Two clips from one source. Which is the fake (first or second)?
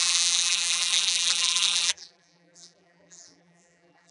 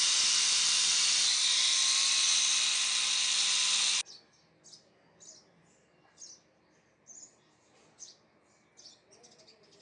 first